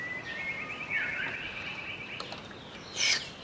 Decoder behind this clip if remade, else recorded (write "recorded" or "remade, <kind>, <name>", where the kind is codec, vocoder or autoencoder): recorded